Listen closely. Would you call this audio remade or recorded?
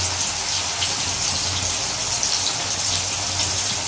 recorded